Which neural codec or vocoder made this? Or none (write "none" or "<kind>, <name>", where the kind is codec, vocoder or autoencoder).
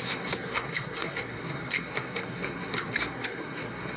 codec, SNAC